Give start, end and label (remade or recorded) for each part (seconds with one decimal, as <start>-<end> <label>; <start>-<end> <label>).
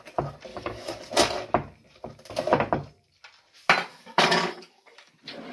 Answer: 0.0-0.5 recorded; 0.5-1.0 remade; 1.0-3.9 recorded; 3.9-5.1 remade; 5.1-5.5 recorded